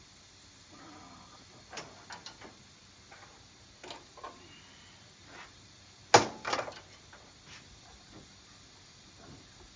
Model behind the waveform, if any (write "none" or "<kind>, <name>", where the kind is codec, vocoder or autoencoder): none